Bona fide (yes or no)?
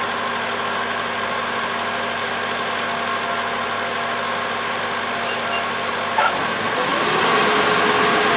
yes